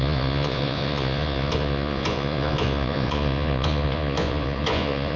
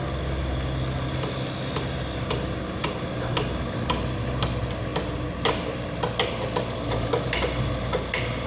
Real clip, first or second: second